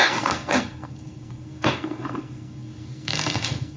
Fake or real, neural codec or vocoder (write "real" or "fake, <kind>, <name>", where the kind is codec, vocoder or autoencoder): fake, codec, SNAC